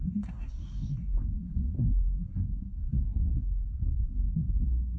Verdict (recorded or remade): remade